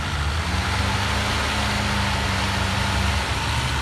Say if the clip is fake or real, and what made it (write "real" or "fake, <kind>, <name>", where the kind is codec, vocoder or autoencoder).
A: real